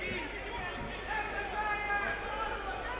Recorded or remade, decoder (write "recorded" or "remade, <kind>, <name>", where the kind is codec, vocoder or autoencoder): recorded